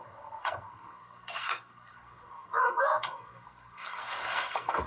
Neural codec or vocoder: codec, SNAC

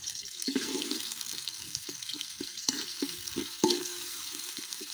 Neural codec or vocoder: codec, SNAC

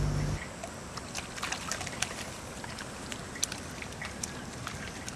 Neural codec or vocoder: none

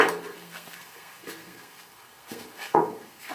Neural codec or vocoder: codec, SNAC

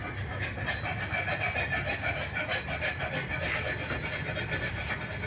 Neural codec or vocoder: none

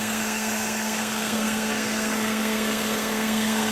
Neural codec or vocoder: codec, SNAC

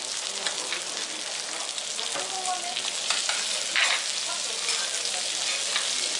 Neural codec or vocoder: none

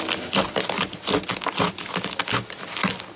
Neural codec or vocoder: none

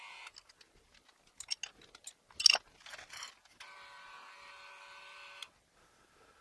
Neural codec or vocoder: none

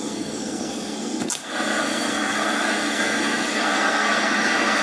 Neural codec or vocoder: codec, SNAC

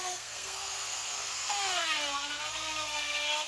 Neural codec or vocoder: codec, SNAC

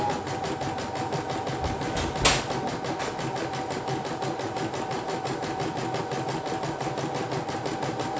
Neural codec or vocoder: none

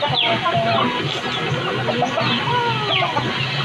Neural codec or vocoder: none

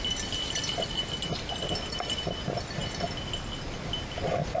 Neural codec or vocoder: none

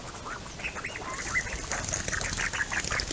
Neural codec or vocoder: none